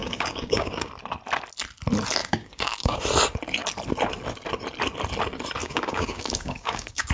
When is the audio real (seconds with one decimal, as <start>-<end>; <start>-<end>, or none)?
0.9-2.2; 3.0-5.6